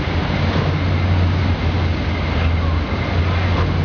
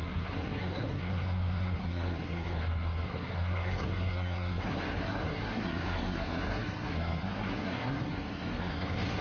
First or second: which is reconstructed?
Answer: second